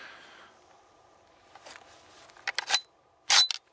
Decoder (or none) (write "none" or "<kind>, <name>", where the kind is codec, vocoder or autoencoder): none